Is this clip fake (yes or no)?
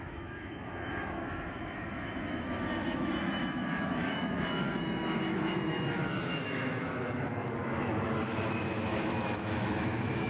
yes